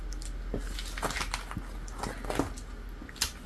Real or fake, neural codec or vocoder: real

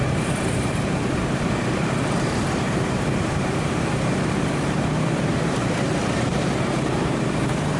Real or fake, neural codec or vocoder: fake, vocoder, BigVGAN v2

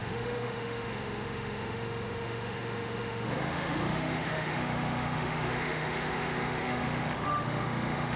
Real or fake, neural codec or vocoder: fake, autoencoder, DAC-VAE